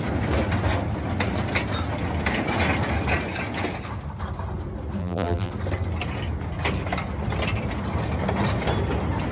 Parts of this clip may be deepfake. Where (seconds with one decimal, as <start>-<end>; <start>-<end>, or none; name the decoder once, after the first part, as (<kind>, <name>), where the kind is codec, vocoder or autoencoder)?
5.0-5.5 (vocoder, BigVGAN v2)